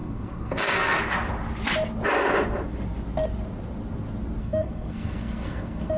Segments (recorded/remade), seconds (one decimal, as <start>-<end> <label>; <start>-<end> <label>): 0.0-1.0 remade; 1.0-4.4 recorded; 4.4-6.0 remade